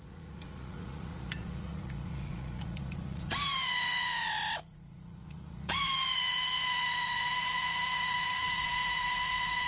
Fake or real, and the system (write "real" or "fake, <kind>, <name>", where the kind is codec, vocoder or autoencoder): fake, vocoder, Vocos